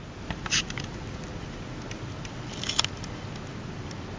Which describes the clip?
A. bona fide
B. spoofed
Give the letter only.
A